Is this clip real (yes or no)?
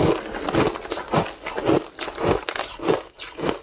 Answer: yes